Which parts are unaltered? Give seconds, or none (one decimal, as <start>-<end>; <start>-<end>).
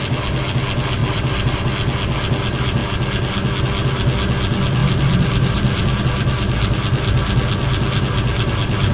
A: 0.0-1.0; 1.6-4.8; 6.0-8.9